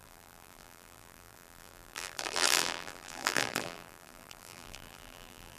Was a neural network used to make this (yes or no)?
yes